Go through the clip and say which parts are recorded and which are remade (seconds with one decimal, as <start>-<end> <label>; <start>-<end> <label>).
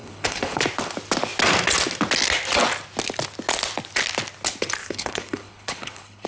0.0-0.6 remade; 0.6-4.8 recorded; 4.8-6.3 remade